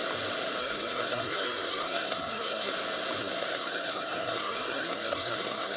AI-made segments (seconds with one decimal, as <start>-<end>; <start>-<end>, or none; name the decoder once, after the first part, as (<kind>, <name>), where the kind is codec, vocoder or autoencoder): 0.6-2.7 (codec, SNAC); 3.2-5.8